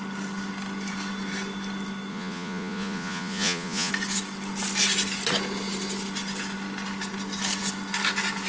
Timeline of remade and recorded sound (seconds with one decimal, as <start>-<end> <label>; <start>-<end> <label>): 0.0-2.1 recorded; 2.1-3.9 remade; 3.9-8.5 recorded